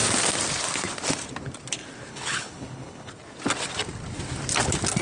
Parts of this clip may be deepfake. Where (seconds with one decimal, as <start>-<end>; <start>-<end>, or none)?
2.1-3.1